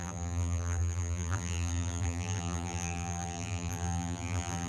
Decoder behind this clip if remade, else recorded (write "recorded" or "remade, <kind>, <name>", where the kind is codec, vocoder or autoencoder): remade, vocoder, BigVGAN v2